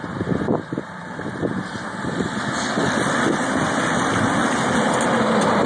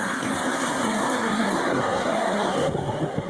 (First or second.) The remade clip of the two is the second